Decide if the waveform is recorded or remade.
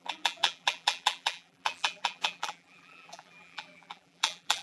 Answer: remade